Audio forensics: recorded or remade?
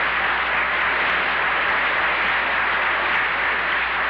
recorded